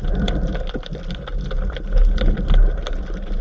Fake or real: real